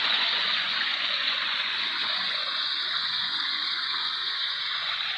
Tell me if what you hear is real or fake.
fake